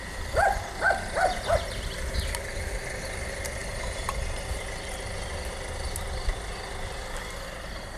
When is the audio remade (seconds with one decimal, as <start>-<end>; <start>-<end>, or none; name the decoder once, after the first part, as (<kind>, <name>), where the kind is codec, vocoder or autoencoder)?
none

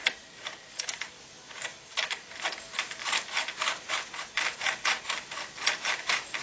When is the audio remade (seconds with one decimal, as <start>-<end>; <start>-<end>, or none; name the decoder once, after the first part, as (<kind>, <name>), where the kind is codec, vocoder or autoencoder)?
none

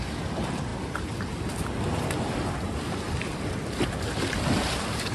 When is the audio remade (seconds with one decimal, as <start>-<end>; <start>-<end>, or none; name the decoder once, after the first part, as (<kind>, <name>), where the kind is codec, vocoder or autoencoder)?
none